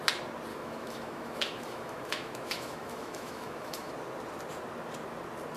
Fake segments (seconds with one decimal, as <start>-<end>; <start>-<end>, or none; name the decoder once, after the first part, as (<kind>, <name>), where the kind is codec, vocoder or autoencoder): 0.5-3.9 (autoencoder, DAC-VAE)

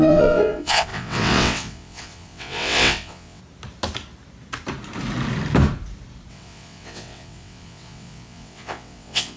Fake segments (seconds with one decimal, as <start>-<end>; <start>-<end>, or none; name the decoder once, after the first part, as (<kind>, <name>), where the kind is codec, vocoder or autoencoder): 0.0-3.4 (vocoder, WaveNeXt); 6.3-9.4